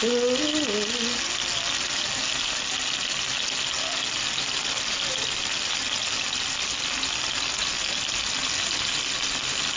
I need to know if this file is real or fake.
real